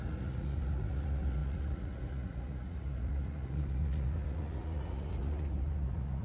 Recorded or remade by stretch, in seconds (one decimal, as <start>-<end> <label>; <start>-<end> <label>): 0.0-6.2 remade